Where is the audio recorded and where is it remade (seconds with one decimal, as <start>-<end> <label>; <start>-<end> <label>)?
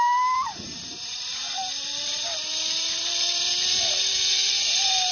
0.0-5.1 remade